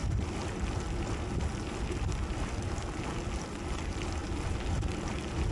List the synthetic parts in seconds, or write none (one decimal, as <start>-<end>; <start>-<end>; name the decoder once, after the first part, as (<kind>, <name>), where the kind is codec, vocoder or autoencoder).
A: none